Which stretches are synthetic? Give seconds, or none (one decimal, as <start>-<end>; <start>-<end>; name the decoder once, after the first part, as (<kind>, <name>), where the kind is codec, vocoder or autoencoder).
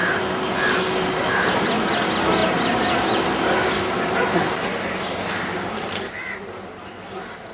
none